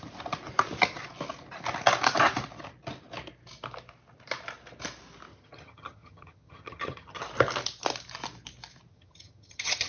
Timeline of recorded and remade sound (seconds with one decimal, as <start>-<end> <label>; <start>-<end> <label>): 0.0-5.3 recorded; 5.3-7.2 remade; 7.2-8.9 recorded; 8.9-9.9 remade